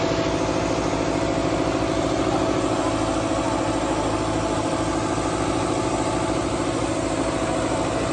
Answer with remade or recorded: recorded